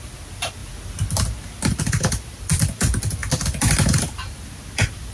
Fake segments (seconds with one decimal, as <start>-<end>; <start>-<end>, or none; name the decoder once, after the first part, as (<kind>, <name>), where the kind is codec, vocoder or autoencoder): 0.0-0.6 (vocoder, BigVGAN v2); 1.8-5.1